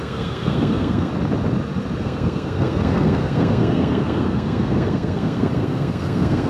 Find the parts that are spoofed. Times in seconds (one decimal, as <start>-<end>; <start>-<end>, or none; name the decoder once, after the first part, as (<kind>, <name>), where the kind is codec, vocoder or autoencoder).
0.0-1.1 (codec, SNAC); 2.0-6.5